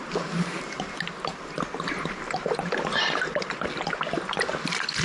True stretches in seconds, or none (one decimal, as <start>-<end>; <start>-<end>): 0.0-5.0